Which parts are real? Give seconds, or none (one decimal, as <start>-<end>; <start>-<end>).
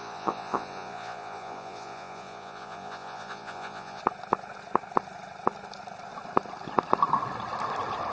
4.0-8.1